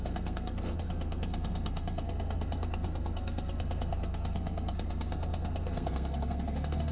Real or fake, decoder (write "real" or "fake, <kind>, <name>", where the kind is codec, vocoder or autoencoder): fake, codec, SNAC